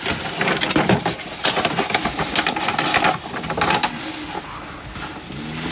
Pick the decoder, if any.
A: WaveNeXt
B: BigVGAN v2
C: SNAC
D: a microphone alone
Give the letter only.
D